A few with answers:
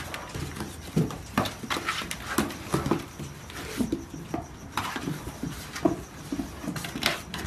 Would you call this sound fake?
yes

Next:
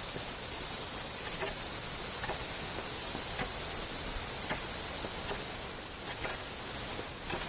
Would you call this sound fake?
no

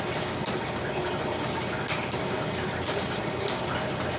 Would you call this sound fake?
no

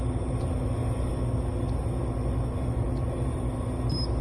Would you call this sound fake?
no